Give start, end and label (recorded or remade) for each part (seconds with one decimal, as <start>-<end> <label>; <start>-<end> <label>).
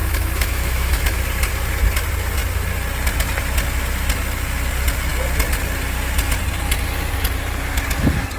0.0-1.2 remade; 1.2-8.4 recorded